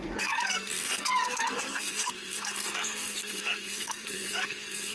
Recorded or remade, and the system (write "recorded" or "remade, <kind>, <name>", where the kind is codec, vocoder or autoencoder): remade, codec, SNAC